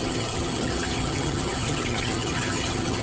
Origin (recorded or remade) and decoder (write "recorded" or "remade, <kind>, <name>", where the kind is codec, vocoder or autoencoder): remade, vocoder, HiFi-GAN